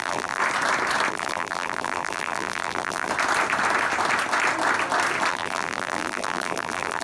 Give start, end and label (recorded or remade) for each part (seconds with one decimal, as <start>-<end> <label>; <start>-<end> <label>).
0.0-0.4 remade; 0.4-1.1 recorded; 1.1-3.1 remade; 3.1-5.3 recorded; 5.3-7.0 remade